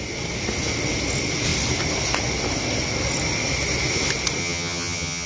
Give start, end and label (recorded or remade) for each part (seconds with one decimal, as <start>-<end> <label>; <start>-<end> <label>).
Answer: 0.0-4.4 recorded; 4.4-5.3 remade